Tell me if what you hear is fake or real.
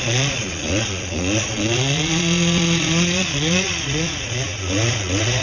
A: fake